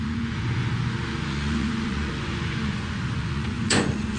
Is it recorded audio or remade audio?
remade